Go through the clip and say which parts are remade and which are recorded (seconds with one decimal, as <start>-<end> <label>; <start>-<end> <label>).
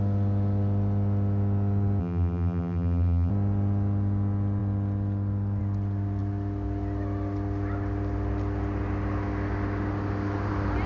0.0-2.0 recorded; 2.0-3.3 remade; 3.3-10.9 recorded